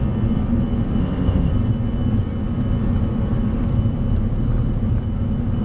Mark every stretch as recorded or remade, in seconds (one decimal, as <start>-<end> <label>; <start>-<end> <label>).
0.0-1.0 recorded; 1.0-1.5 remade; 1.5-5.6 recorded